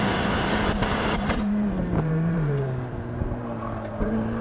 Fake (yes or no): yes